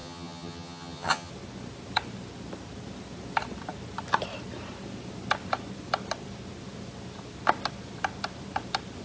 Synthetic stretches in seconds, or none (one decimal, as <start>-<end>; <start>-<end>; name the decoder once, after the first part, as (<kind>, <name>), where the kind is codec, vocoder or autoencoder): 0.0-1.3 (vocoder, HiFi-GAN)